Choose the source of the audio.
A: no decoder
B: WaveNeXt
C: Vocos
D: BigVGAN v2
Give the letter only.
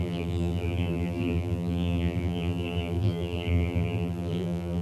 D